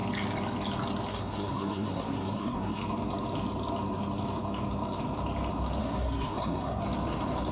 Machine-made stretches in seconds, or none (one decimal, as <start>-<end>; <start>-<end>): 1.1-2.8; 5.8-6.8